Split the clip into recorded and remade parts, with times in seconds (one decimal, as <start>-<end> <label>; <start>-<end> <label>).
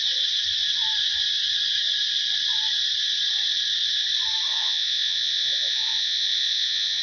0.0-4.5 recorded; 4.5-7.0 remade